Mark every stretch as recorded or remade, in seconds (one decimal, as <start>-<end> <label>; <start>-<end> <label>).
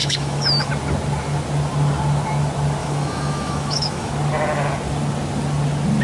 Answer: 0.0-0.7 remade; 0.7-2.8 recorded; 2.8-4.1 remade; 4.1-6.0 recorded